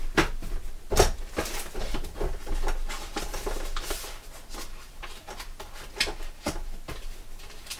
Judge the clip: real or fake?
real